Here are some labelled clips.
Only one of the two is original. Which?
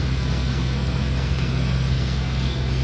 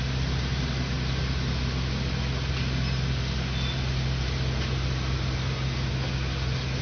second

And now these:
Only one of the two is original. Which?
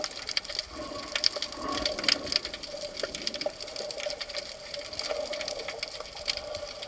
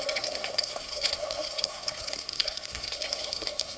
first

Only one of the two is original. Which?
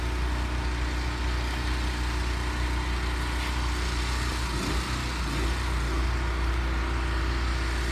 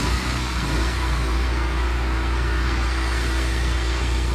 first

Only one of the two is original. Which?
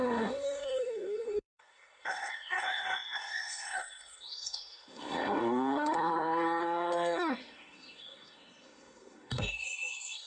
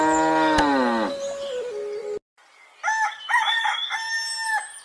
second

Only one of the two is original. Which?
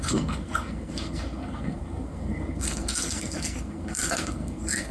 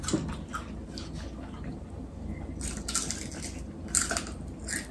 second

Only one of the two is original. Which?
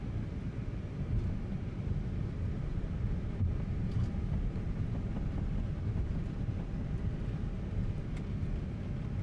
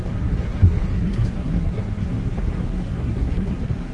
first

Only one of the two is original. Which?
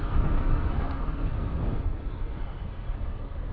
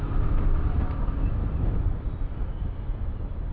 second